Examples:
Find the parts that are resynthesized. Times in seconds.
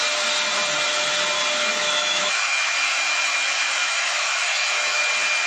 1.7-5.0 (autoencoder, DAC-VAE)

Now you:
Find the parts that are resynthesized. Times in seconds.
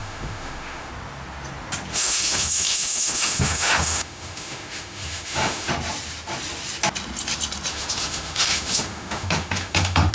0.0-0.9 (autoencoder, DAC-VAE); 1.9-5.7; 7.7-10.1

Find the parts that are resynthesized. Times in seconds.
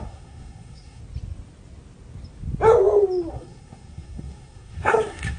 0.0-1.0 (codec, SNAC); 3.3-5.4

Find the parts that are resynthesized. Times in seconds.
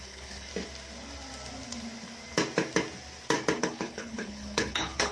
0.0-0.5 (codec, HILCodec); 3.6-5.1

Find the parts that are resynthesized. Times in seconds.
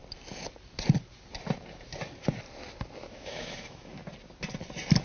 3.0-4.0 (autoencoder, DAC-VAE)